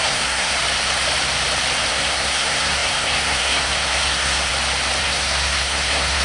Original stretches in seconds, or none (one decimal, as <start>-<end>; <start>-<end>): 0.5-1.9; 4.5-5.0